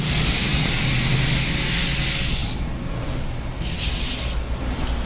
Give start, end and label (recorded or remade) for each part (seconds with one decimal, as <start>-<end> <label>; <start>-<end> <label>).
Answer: 0.0-5.1 recorded